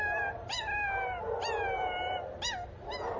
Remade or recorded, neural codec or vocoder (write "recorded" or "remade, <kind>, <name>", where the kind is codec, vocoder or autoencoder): recorded